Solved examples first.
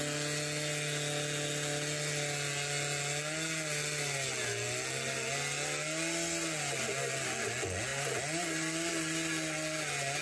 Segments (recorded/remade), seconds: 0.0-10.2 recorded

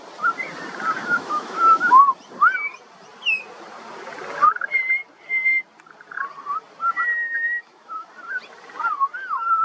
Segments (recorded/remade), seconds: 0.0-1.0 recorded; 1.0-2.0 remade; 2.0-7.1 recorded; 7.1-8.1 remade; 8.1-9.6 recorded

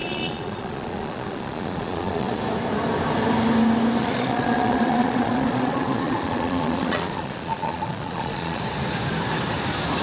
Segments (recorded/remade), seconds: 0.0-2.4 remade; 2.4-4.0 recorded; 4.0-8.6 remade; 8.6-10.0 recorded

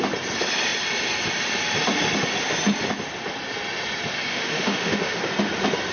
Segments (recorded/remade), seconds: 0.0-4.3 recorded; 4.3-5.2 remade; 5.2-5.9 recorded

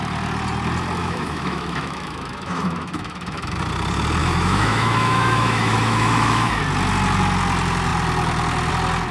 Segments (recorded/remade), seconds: 0.0-1.0 recorded; 1.0-3.6 remade; 3.6-4.2 recorded; 4.2-6.6 remade; 6.6-9.1 recorded